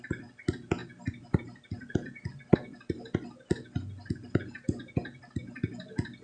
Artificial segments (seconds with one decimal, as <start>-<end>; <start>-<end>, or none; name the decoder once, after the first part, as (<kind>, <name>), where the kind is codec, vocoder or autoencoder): none